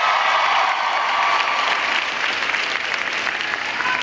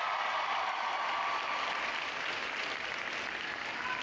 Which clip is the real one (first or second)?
first